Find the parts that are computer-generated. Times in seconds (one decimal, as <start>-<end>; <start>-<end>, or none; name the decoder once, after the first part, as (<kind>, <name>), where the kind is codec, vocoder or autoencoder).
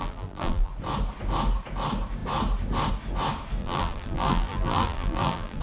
0.0-0.7 (vocoder, BigVGAN v2); 3.6-5.6